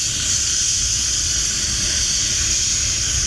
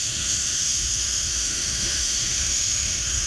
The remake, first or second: second